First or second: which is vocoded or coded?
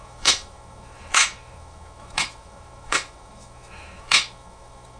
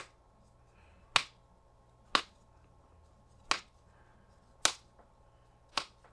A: first